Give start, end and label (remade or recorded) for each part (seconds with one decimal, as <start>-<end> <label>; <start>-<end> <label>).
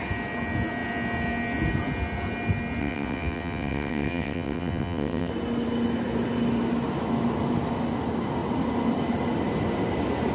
0.0-2.8 recorded; 2.8-5.3 remade; 5.3-10.3 recorded